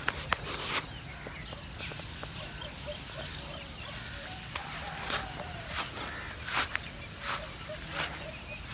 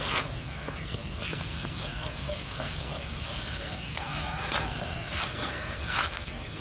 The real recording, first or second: first